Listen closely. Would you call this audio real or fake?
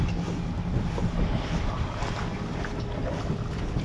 real